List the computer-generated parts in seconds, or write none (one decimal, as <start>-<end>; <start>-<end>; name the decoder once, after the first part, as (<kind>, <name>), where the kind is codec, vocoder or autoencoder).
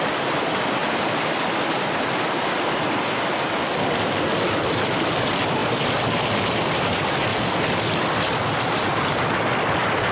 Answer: none